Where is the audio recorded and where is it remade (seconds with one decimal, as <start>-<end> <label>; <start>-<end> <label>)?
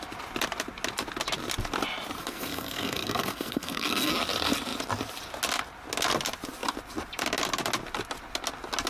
0.0-2.2 recorded; 2.2-4.1 remade; 4.1-8.9 recorded